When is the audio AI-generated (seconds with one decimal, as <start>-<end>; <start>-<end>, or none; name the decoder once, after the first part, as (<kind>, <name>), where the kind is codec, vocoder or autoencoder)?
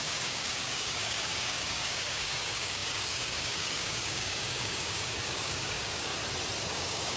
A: 0.0-6.1 (codec, DAC); 6.6-7.2